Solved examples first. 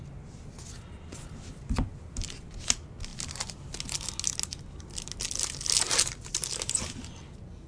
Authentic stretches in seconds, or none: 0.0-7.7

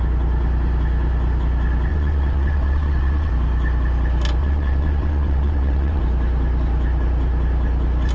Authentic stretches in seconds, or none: 0.0-1.9; 3.3-4.4; 6.0-8.1

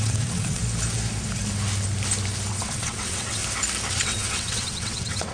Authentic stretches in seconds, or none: 0.6-2.5; 3.4-3.9

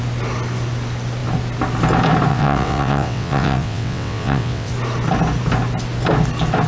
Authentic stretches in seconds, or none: 0.0-2.3; 4.7-6.7